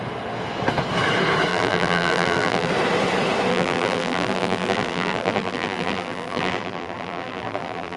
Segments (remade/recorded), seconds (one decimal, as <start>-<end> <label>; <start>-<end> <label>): 0.0-1.5 recorded; 1.5-2.7 remade; 2.7-3.5 recorded; 3.5-8.0 remade